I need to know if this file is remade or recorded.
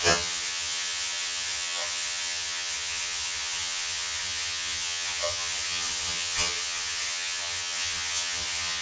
remade